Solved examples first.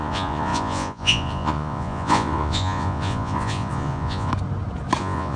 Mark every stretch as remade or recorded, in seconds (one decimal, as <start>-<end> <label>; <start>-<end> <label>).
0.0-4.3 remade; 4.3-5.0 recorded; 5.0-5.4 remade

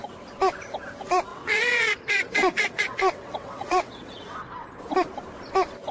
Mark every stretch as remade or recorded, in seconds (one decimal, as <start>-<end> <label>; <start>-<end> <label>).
0.0-1.3 recorded; 1.3-4.8 remade; 4.8-5.9 recorded

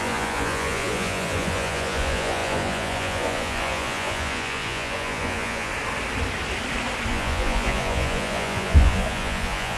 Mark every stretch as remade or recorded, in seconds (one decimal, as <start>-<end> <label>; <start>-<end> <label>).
0.0-5.7 remade; 5.7-7.1 recorded; 7.1-9.8 remade